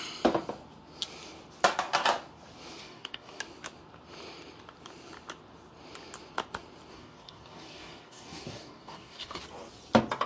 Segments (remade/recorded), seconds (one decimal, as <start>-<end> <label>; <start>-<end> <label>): 0.0-2.8 recorded; 2.8-3.4 remade; 3.4-6.9 recorded; 6.9-9.4 remade; 9.4-10.3 recorded